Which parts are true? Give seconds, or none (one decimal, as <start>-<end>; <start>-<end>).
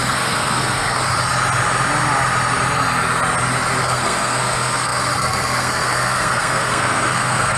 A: 1.0-3.8